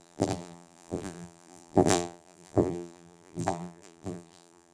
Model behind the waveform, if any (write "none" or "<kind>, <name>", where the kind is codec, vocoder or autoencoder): vocoder, BigVGAN v2